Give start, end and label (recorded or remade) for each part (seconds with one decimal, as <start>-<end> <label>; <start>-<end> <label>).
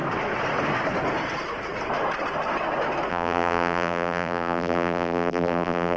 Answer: 0.0-3.1 recorded; 3.1-6.0 remade